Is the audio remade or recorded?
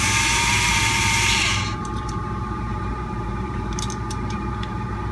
remade